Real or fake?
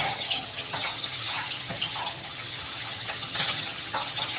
fake